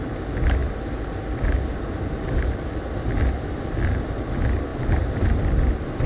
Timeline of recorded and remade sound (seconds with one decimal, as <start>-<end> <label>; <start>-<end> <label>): 0.0-4.7 recorded; 4.7-5.4 remade; 5.4-6.1 recorded